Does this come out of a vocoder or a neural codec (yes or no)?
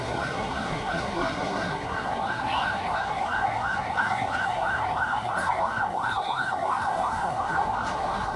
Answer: yes